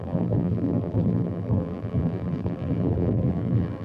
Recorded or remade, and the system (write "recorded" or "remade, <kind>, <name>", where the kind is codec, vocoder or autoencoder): remade, vocoder, BigVGAN v2